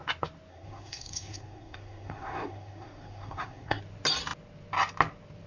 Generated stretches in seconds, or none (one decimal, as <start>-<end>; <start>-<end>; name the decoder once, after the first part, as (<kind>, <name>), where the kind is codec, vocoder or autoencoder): 0.5-3.8 (codec, SNAC)